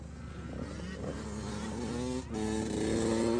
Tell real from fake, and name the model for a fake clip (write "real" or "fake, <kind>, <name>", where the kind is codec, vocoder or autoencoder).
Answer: real